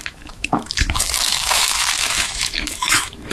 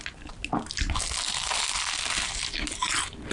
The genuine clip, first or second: second